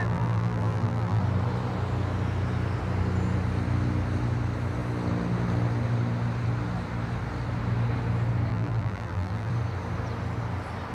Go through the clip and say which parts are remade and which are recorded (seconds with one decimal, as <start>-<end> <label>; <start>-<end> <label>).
0.0-1.2 remade; 1.2-8.5 recorded; 8.5-9.5 remade; 9.5-10.9 recorded